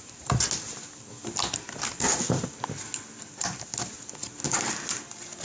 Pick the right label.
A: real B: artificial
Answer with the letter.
A